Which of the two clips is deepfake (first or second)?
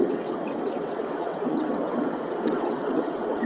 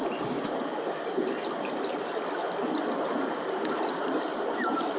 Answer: first